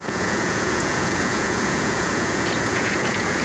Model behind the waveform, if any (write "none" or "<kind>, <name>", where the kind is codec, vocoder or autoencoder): vocoder, Vocos